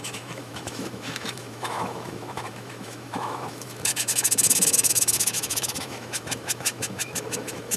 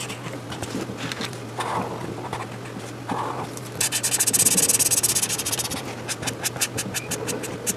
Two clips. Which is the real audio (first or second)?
second